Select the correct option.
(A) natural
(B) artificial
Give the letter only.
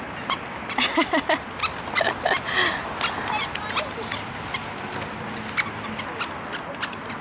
A